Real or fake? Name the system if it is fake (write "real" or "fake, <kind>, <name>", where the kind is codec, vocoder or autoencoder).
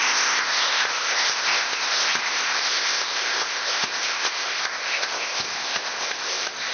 fake, codec, ZipCodec